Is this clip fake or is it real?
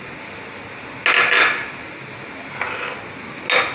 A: real